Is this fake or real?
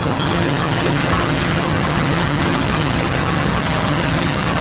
fake